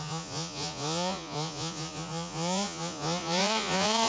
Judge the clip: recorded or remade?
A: remade